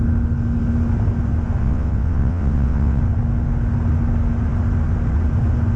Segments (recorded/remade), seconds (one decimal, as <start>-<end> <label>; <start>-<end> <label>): 0.0-1.6 recorded; 1.6-3.0 remade; 3.0-5.8 recorded